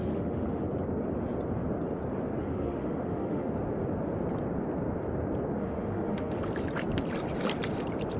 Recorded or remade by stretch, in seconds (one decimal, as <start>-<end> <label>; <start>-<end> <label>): 0.0-0.6 remade; 0.6-2.4 recorded; 2.4-3.5 remade; 3.5-5.6 recorded; 5.6-6.4 remade; 6.4-8.2 recorded